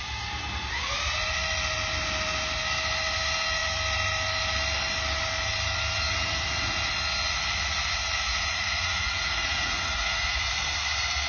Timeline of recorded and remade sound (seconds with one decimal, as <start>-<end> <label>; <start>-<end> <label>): 0.0-8.3 recorded; 8.3-10.5 remade; 10.5-11.3 recorded